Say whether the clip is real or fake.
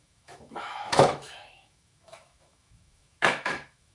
fake